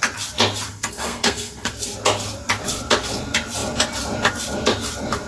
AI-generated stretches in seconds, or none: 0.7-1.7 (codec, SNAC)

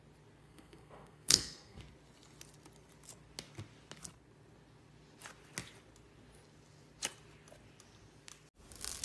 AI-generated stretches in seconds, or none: 0.4-1.8 (codec, SNAC)

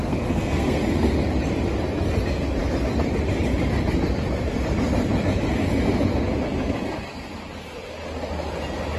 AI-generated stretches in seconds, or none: 0.0-0.8 (codec, SNAC)

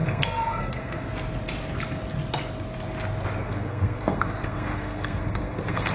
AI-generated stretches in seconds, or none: 0.0-1.1 (codec, SNAC); 3.4-5.9

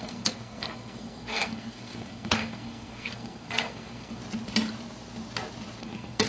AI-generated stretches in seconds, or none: 0.0-4.2 (codec, SNAC); 5.8-6.3

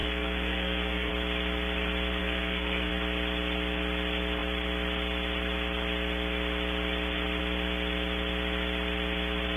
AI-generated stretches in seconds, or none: 0.0-1.1 (codec, SNAC); 2.2-2.9

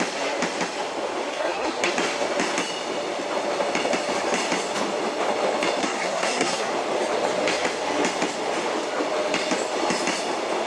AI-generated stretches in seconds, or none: 1.3-1.9 (codec, SNAC); 5.8-6.7

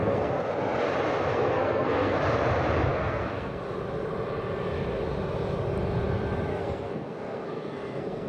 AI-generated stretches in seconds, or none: 0.0-0.5 (codec, SNAC); 1.3-2.2; 2.9-3.6; 6.5-8.3